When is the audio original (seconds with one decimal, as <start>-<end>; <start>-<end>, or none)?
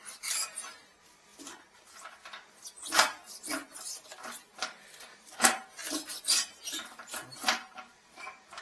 4.1-5.1; 5.8-6.3